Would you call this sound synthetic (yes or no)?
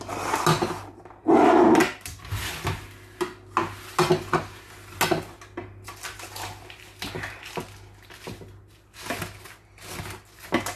no